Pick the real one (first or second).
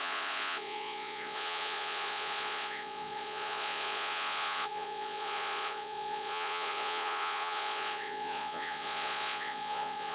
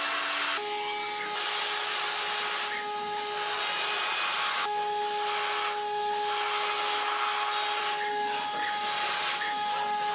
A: second